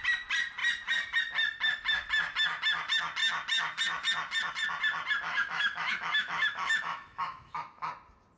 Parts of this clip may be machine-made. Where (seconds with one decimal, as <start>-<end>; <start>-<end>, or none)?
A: 5.3-7.9